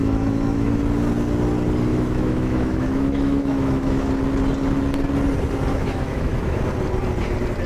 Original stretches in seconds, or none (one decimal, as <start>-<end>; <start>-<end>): 0.8-1.9; 4.1-5.7; 6.6-7.7